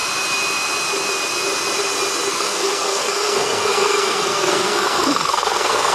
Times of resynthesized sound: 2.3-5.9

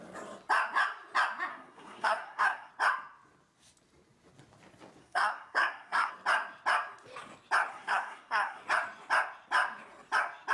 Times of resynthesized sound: 1.5-2.7; 5.0-6.1; 7.7-8.6